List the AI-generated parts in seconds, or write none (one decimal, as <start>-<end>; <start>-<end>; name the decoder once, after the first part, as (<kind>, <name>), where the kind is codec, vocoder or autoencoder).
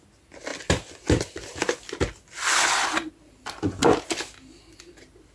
none